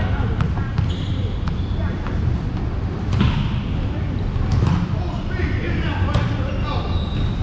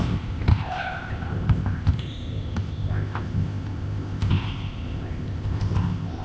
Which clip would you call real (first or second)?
first